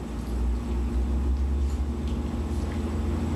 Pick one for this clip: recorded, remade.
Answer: recorded